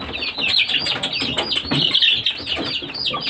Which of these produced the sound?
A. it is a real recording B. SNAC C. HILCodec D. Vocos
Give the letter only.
A